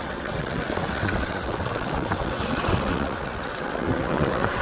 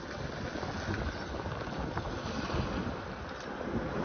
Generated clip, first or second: first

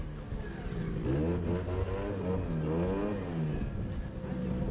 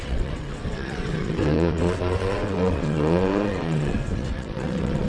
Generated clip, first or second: second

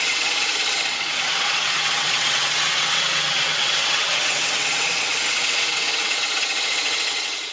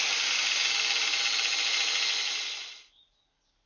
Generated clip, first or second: first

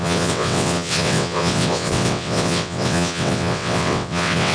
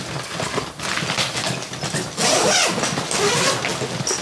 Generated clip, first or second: first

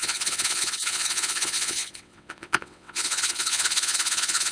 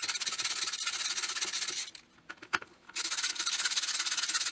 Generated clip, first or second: first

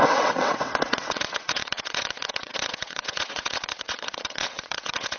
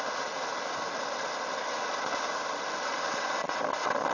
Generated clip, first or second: first